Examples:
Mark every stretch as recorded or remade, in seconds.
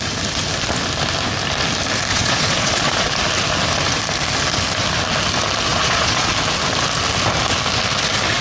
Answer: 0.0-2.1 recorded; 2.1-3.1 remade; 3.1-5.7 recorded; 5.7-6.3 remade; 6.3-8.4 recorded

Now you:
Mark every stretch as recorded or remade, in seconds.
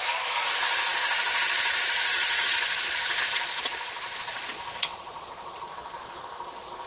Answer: 0.0-2.1 recorded; 2.1-6.2 remade; 6.2-6.9 recorded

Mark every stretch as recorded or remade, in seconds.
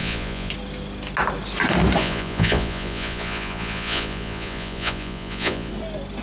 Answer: 0.0-0.5 remade; 0.5-2.0 recorded; 2.0-5.7 remade; 5.7-6.2 recorded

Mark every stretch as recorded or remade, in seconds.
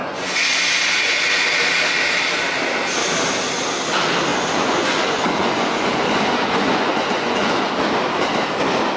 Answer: 0.0-1.5 remade; 1.5-4.3 recorded; 4.3-7.7 remade; 7.7-9.0 recorded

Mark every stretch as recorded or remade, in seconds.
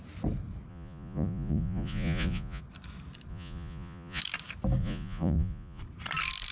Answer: 0.0-0.7 recorded; 0.7-2.6 remade; 2.6-3.3 recorded; 3.3-4.2 remade; 4.2-4.8 recorded; 4.8-5.8 remade; 5.8-6.5 recorded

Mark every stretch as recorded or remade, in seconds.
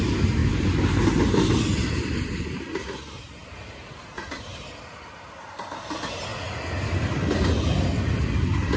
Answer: 0.0-8.8 recorded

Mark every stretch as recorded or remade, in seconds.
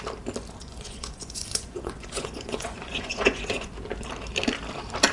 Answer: 0.0-0.6 recorded; 0.6-3.7 remade; 3.7-5.1 recorded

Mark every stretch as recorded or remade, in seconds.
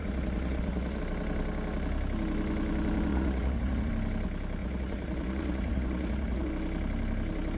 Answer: 0.0-1.0 remade; 1.0-3.1 recorded; 3.1-3.9 remade; 3.9-4.6 recorded; 4.6-6.5 remade; 6.5-7.6 recorded